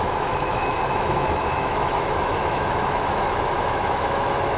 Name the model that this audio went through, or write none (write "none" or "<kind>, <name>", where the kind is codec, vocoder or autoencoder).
autoencoder, DAC-VAE